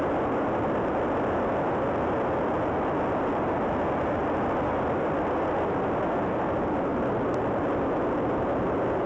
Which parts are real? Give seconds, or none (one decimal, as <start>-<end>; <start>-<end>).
0.0-9.1